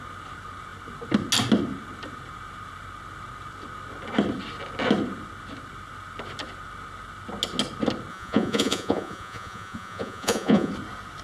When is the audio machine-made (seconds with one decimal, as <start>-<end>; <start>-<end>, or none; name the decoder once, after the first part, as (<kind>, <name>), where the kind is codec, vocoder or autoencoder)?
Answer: 8.1-10.7 (vocoder, Vocos)